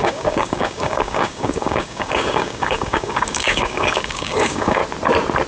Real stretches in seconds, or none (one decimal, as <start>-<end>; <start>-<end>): 4.8-5.5